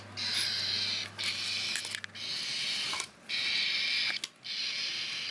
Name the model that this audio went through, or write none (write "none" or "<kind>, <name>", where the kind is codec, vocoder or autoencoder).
none